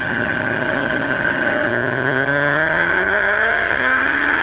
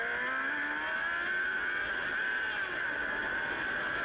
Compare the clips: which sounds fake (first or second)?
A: first